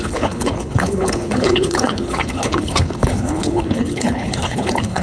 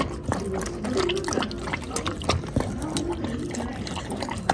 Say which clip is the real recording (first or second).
second